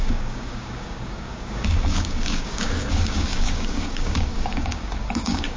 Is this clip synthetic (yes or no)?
yes